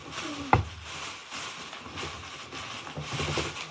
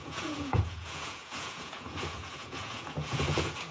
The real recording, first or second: first